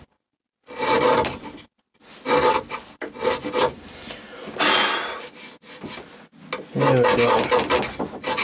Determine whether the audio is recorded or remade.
recorded